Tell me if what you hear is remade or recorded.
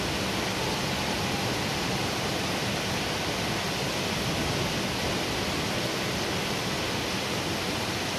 recorded